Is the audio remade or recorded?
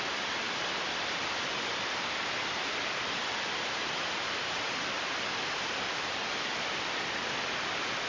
remade